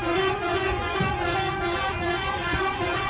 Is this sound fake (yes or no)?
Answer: yes